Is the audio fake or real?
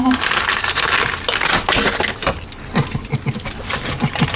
real